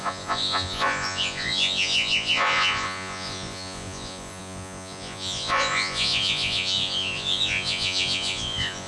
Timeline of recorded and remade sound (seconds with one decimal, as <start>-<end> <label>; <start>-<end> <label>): 0.0-8.9 remade